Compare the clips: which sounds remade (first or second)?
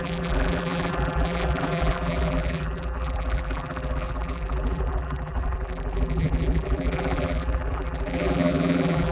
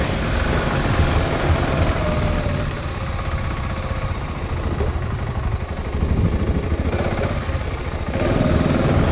first